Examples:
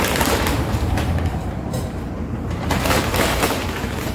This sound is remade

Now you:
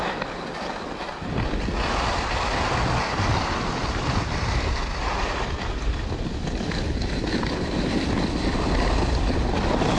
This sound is recorded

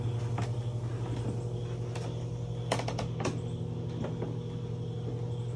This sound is recorded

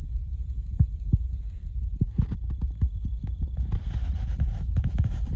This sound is remade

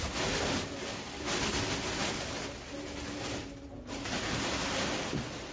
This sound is recorded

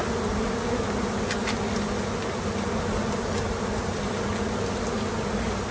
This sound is recorded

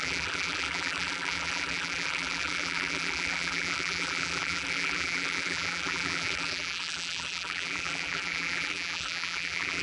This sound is remade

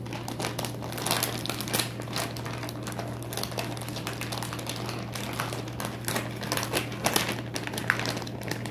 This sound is recorded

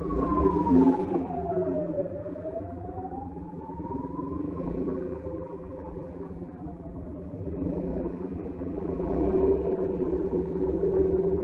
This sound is remade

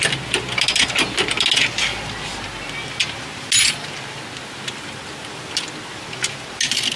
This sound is recorded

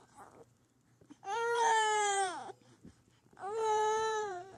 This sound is remade